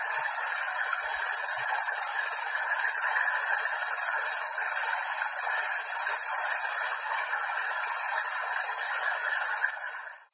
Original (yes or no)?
yes